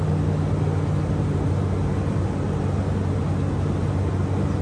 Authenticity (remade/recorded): recorded